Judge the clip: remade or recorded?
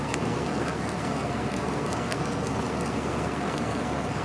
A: remade